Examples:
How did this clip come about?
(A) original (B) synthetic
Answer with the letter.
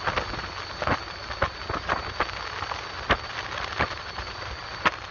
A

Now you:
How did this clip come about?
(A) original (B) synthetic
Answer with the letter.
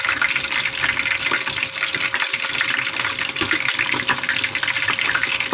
A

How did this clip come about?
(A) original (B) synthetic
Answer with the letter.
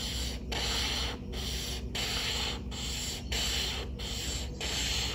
A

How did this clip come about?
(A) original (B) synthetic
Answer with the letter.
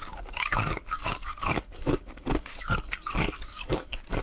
B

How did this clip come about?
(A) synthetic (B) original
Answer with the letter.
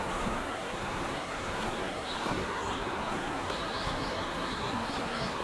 A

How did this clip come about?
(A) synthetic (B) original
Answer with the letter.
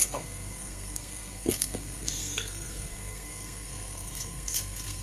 A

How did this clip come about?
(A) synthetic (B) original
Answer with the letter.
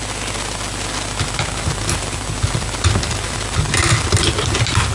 B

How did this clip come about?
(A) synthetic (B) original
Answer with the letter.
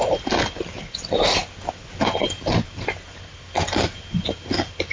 B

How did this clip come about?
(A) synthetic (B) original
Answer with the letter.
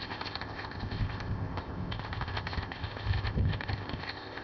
A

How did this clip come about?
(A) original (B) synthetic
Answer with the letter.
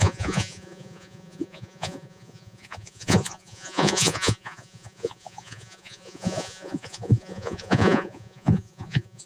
B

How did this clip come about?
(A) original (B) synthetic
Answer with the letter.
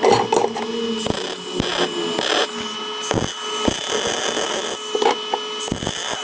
A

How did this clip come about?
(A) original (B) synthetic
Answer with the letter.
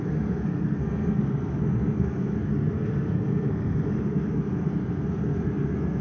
B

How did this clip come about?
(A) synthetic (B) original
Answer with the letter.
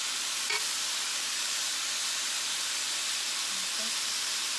B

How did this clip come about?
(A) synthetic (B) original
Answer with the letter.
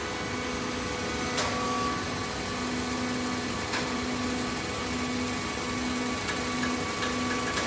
B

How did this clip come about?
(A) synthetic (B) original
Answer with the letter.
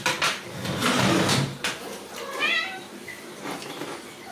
B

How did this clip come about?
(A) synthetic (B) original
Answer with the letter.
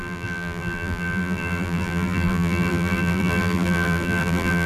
A